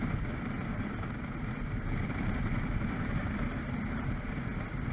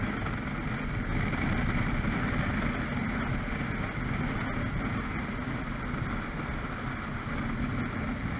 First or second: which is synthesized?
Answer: first